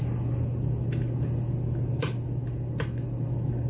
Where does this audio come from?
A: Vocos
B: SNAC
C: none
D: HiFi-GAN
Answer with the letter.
C